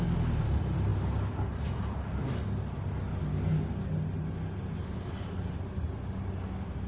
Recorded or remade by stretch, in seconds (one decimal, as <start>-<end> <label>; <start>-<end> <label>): 0.0-6.9 recorded